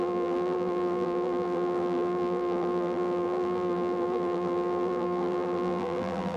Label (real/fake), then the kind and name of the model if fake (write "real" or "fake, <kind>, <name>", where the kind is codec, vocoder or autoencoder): fake, vocoder, BigVGAN v2